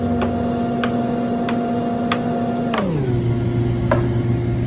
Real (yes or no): yes